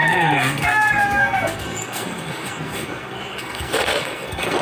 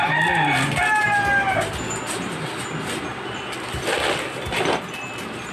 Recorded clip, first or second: second